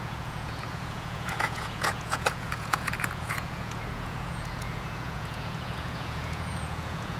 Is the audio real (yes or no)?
no